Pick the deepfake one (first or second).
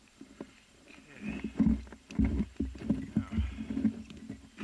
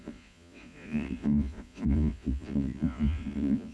second